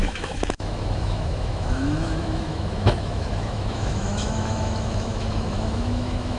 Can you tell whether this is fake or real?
fake